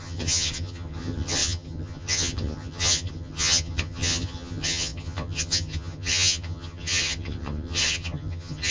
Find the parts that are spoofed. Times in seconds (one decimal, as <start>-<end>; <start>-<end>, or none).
0.0-8.7